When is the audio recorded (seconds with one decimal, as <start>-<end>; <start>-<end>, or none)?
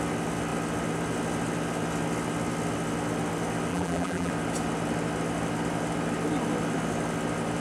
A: 0.0-3.7; 4.3-7.6